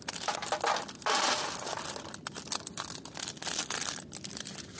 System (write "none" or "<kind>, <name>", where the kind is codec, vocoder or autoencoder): none